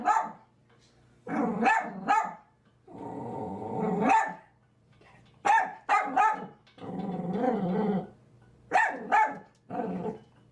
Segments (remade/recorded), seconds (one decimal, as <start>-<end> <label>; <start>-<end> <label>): 0.0-0.6 remade; 0.6-1.9 recorded; 1.9-10.5 remade